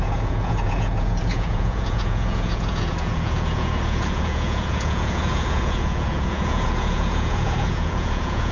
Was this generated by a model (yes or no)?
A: yes